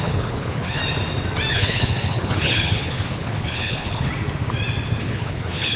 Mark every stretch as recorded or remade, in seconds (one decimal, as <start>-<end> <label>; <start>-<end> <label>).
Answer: 0.0-0.8 remade; 0.8-1.5 recorded; 1.5-4.1 remade; 4.1-5.0 recorded; 5.0-5.8 remade